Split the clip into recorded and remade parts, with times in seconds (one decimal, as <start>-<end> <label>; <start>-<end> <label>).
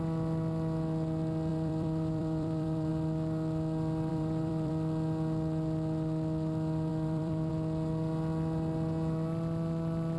0.0-1.5 recorded; 1.5-2.9 remade; 2.9-4.1 recorded; 4.1-4.7 remade; 4.7-6.9 recorded; 6.9-7.5 remade; 7.5-10.2 recorded